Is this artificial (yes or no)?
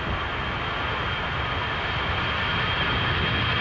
no